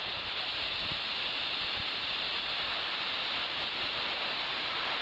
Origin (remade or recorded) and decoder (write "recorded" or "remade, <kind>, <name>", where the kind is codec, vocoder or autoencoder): remade, vocoder, BigVGAN v2